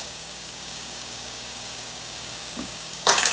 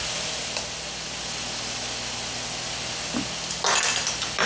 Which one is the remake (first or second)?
first